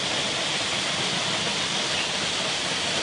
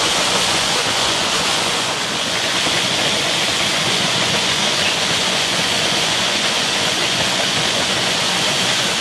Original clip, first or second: first